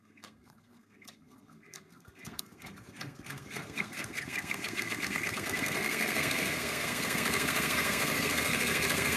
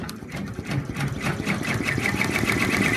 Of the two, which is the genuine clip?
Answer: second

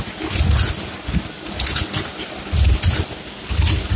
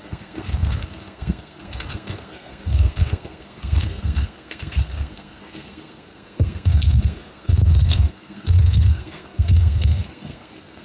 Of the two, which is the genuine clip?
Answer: first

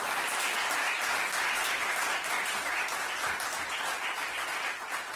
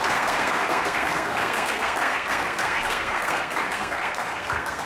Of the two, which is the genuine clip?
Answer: first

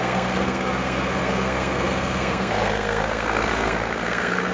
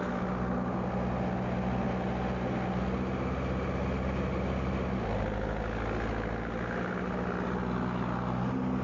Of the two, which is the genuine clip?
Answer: second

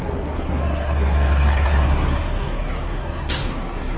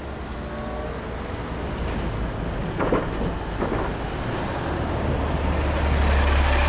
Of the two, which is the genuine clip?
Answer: second